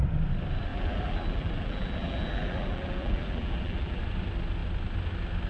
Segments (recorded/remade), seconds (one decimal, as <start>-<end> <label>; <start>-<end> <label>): 0.0-0.7 recorded; 0.7-4.0 remade; 4.0-5.5 recorded